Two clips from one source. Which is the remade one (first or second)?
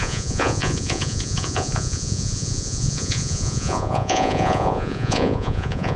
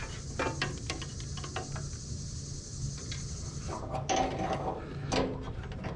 first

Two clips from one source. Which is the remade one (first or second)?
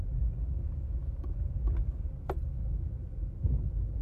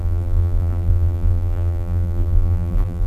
second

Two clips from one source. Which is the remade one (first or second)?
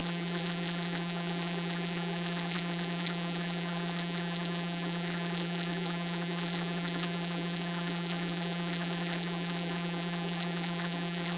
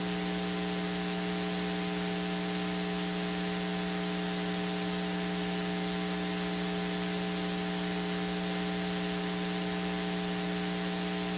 first